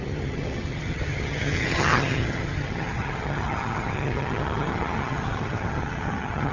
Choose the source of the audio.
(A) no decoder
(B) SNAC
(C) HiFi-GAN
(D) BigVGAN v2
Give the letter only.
C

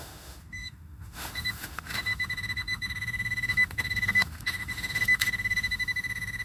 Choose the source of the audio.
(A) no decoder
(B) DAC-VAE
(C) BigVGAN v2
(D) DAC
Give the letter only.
B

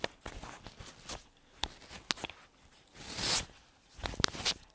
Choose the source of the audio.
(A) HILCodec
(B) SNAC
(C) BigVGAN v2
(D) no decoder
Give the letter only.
D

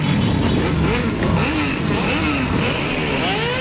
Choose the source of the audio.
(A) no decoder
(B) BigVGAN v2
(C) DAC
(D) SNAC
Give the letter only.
A